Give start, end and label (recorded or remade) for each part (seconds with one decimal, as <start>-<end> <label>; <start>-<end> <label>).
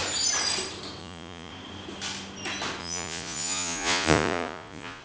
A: 0.0-1.0 recorded; 1.0-1.5 remade; 1.5-2.8 recorded; 2.8-5.0 remade